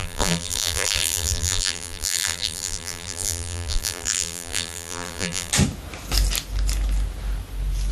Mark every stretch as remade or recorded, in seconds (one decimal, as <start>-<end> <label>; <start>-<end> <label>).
0.0-5.5 remade; 5.5-7.9 recorded